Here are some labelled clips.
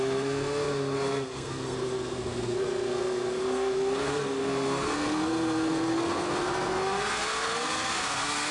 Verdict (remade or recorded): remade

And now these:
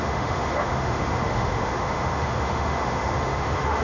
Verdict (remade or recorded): remade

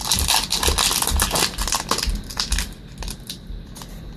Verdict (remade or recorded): recorded